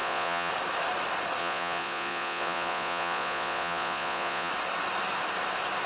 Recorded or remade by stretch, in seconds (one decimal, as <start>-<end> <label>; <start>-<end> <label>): 0.0-0.5 remade; 0.5-1.4 recorded; 1.4-4.5 remade; 4.5-5.9 recorded